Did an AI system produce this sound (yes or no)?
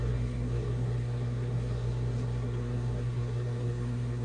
yes